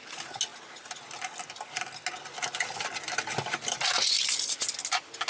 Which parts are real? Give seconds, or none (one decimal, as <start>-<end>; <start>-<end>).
0.0-5.3